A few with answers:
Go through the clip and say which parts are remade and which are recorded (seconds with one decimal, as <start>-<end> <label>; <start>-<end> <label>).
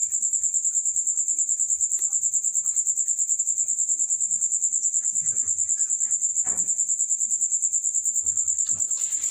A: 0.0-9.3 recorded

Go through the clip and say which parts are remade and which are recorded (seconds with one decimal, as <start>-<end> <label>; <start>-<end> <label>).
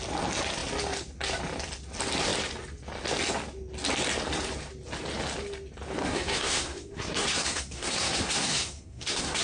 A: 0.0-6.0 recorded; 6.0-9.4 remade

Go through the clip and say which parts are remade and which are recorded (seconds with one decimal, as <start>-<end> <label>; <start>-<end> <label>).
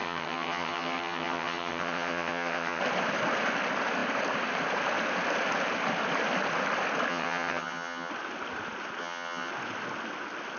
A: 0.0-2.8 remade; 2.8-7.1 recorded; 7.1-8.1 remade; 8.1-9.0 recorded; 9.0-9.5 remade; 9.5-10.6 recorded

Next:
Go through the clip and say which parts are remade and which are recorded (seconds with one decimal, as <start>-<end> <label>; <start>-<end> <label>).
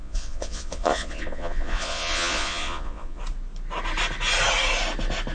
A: 0.0-3.2 remade; 3.2-5.3 recorded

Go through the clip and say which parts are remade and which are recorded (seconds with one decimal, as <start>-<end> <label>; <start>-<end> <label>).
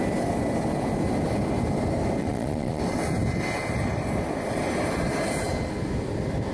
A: 0.0-2.2 recorded; 2.2-2.8 remade; 2.8-6.5 recorded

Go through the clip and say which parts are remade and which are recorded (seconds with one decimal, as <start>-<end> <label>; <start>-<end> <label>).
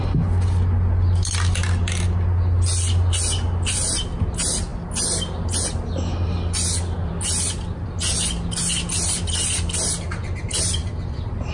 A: 0.0-11.5 recorded